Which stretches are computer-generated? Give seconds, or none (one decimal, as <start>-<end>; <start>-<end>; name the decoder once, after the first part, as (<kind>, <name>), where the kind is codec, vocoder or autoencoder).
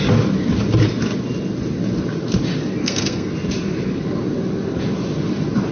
2.8-3.3 (codec, SNAC)